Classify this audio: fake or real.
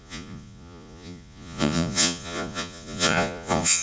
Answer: fake